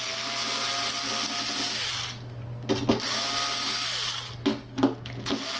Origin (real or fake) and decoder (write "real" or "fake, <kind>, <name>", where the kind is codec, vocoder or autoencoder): real